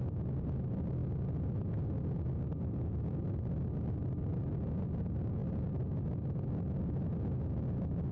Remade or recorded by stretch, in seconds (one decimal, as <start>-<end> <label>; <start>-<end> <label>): 0.0-8.1 recorded